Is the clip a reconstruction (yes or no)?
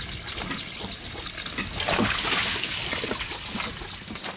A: no